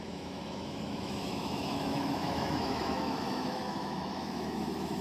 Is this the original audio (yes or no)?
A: no